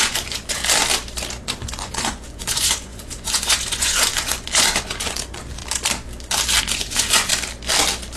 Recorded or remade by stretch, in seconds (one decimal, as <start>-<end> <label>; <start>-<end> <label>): 0.0-0.6 remade; 0.6-1.4 recorded; 1.4-5.6 remade; 5.6-6.6 recorded; 6.6-7.3 remade; 7.3-8.2 recorded

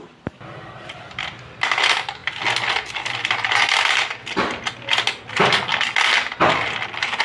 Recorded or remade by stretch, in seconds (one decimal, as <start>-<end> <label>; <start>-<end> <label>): 0.0-7.2 recorded

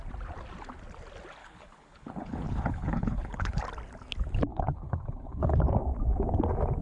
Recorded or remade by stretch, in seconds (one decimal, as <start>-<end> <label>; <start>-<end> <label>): 0.0-1.4 recorded; 1.4-3.6 remade; 3.6-4.5 recorded; 4.5-5.6 remade; 5.6-6.8 recorded